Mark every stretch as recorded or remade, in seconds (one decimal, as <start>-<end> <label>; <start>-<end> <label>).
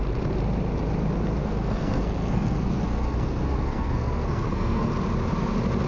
0.0-1.4 recorded; 1.4-4.9 remade; 4.9-5.9 recorded